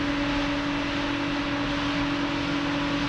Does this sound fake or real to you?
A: real